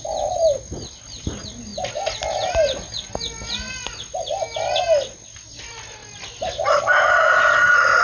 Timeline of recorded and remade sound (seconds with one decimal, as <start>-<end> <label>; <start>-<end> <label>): 0.0-8.0 recorded